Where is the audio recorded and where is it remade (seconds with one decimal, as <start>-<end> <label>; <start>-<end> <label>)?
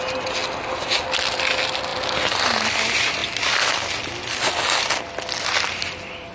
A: 0.0-6.3 recorded